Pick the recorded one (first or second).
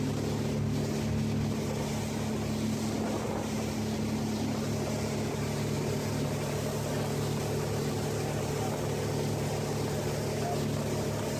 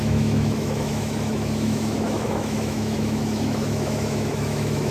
first